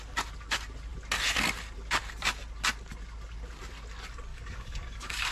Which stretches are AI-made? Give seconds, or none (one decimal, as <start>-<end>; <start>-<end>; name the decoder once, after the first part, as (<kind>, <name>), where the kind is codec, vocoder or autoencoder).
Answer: 4.3-5.3 (codec, DAC)